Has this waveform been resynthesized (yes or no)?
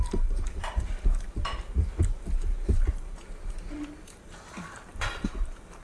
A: yes